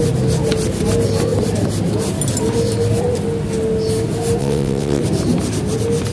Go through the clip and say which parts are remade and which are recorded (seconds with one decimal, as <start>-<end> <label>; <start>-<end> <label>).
0.0-4.4 recorded; 4.4-5.0 remade; 5.0-6.1 recorded